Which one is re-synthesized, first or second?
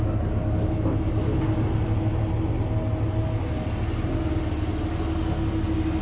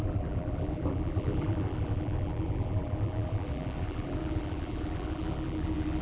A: second